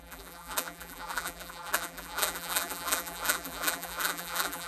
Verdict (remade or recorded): remade